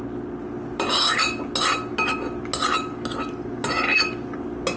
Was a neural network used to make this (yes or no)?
no